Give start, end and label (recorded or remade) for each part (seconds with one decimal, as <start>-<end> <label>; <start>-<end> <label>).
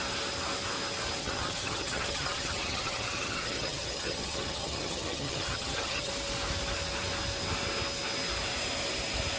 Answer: 0.0-1.2 recorded; 1.2-6.1 remade; 6.1-9.4 recorded